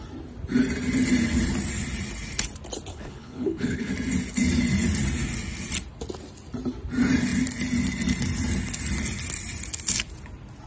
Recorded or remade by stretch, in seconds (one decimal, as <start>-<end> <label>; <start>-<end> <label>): 0.0-2.9 recorded; 2.9-3.9 remade; 3.9-10.7 recorded